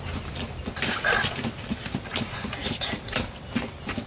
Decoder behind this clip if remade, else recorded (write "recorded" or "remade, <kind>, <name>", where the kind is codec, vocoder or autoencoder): recorded